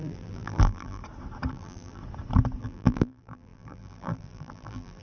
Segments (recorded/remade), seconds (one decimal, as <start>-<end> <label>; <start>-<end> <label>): 0.0-1.0 remade; 1.0-1.5 recorded; 1.5-2.0 remade; 2.0-2.6 recorded; 2.6-5.0 remade